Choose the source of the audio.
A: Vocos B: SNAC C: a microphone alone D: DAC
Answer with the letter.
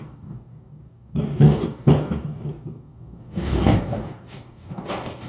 D